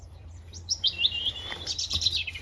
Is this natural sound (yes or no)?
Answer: no